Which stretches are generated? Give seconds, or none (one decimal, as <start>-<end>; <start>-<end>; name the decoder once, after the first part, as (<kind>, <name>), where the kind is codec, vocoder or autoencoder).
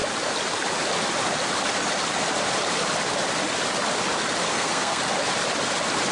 4.5-5.0 (codec, SNAC)